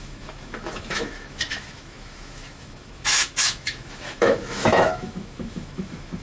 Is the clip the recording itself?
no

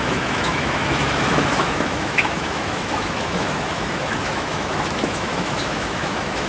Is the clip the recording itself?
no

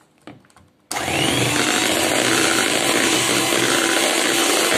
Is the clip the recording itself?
yes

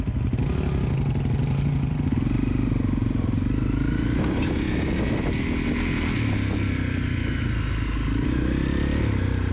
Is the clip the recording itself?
yes